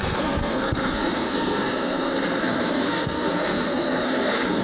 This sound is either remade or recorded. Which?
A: remade